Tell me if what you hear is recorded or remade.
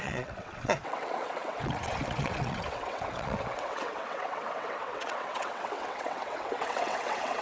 remade